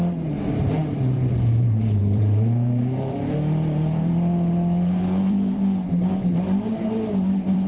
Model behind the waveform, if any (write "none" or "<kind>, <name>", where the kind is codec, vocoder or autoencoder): vocoder, BigVGAN v2